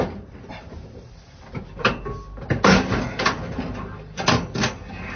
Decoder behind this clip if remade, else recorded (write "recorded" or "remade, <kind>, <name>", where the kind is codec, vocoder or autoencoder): recorded